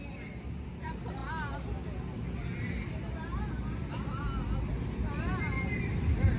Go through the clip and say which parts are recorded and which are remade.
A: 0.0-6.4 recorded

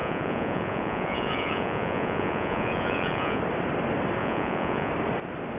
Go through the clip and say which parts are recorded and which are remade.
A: 0.0-3.4 remade; 3.4-4.2 recorded; 4.2-4.9 remade; 4.9-5.6 recorded

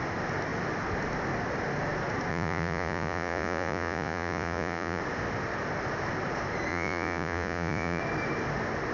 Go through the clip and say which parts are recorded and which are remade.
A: 0.0-2.3 recorded; 2.3-5.0 remade; 5.0-6.7 recorded; 6.7-8.0 remade; 8.0-8.9 recorded